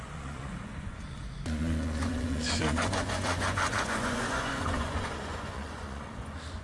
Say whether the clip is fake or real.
fake